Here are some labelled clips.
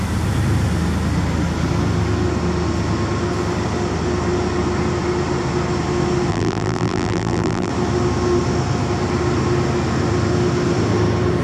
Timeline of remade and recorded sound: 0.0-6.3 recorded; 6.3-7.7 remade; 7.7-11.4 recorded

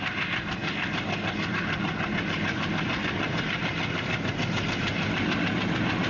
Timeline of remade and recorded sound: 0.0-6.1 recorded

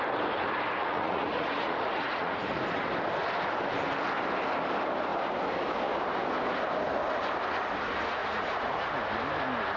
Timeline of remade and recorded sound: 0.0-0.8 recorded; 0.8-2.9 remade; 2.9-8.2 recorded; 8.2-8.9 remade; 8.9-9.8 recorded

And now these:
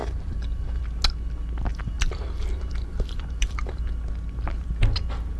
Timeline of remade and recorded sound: 0.0-0.8 remade; 0.8-1.7 recorded; 1.7-3.8 remade; 3.8-5.4 recorded

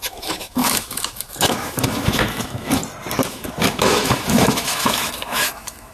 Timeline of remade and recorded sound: 0.0-2.8 remade; 2.8-3.3 recorded; 3.3-5.9 remade

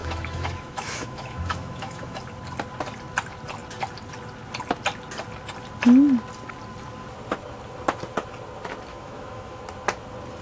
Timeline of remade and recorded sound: 0.0-2.2 remade; 2.2-8.9 recorded; 8.9-9.6 remade; 9.6-10.4 recorded

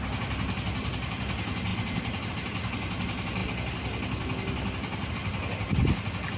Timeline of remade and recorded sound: 0.0-1.7 recorded; 1.7-2.3 remade; 2.3-6.4 recorded

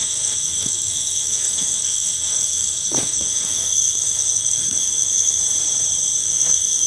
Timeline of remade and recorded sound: 0.0-5.4 remade; 5.4-6.2 recorded; 6.2-6.9 remade